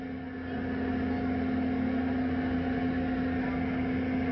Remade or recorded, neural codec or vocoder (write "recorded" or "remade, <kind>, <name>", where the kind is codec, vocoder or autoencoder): recorded